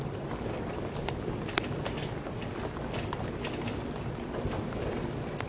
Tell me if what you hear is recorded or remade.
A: remade